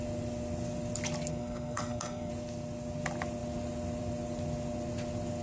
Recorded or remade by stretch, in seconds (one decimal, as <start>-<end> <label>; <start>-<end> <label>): 0.0-1.3 recorded; 1.3-2.3 remade; 2.3-5.4 recorded